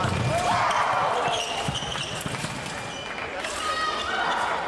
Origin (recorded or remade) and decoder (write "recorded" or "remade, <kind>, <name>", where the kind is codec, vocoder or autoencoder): recorded